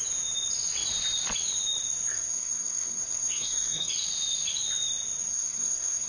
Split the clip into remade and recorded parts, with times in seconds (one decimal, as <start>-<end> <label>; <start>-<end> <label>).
0.0-2.1 recorded; 2.1-3.9 remade; 3.9-5.3 recorded; 5.3-6.1 remade